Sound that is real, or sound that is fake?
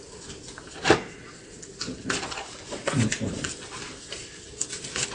real